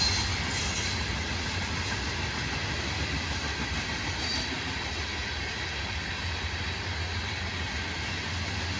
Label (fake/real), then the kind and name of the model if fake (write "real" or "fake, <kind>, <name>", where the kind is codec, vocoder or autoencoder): real